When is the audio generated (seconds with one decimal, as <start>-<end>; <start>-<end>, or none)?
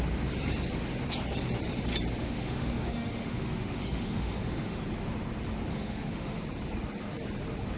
2.2-4.8; 5.7-6.4